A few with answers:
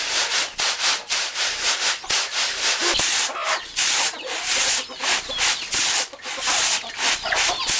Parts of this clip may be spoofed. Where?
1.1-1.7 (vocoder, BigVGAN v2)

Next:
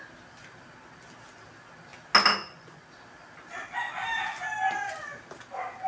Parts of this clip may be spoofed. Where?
2.4-2.9 (vocoder, Vocos)